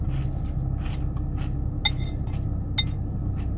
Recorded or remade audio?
recorded